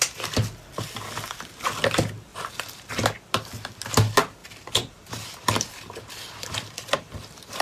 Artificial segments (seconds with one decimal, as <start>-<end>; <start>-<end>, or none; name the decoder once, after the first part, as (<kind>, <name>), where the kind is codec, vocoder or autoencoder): 2.3-2.9 (vocoder, BigVGAN v2); 4.4-7.6